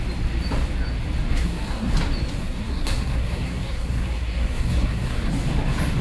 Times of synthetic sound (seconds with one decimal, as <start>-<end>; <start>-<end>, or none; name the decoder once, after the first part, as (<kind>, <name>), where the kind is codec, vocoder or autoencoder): 1.3-1.9 (codec, SNAC); 2.4-5.3